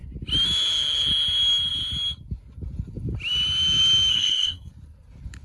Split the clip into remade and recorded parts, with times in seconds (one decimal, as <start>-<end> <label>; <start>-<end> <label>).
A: 0.0-4.1 recorded; 4.1-4.7 remade; 4.7-5.4 recorded

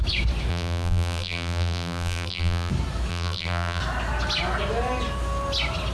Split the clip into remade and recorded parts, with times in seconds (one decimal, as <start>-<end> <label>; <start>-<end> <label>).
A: 0.0-0.5 recorded; 0.5-2.7 remade; 2.7-3.1 recorded; 3.1-3.8 remade; 3.8-5.9 recorded

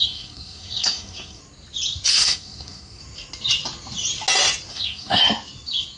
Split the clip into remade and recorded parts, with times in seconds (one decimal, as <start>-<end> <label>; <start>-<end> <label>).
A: 0.0-1.4 remade; 1.4-2.1 recorded; 2.1-3.0 remade; 3.0-4.7 recorded; 4.7-5.2 remade; 5.2-6.0 recorded

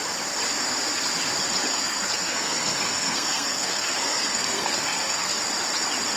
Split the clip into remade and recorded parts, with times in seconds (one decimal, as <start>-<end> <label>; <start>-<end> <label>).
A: 0.0-1.7 recorded; 1.7-5.4 remade; 5.4-6.2 recorded

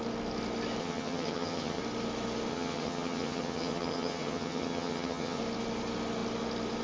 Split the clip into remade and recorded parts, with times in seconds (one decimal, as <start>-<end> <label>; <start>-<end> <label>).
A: 0.0-0.8 recorded; 0.8-1.8 remade; 1.8-2.5 recorded; 2.5-5.4 remade; 5.4-6.8 recorded

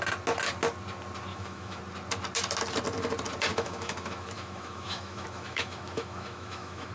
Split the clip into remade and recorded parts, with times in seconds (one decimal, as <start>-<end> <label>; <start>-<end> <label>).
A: 0.0-1.3 recorded; 1.3-1.8 remade; 1.8-3.5 recorded; 3.5-6.9 remade

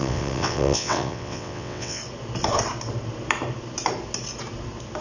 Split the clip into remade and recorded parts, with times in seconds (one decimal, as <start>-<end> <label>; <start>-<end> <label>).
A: 0.0-2.0 remade; 2.0-5.0 recorded